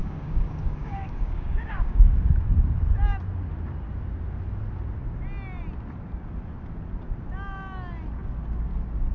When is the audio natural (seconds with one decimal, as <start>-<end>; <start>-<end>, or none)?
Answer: 2.3-9.1